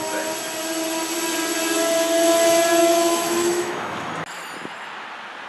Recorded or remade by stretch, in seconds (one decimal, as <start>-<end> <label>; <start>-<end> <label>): 0.0-2.8 recorded; 2.8-4.1 remade; 4.1-5.5 recorded